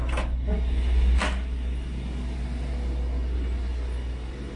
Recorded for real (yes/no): yes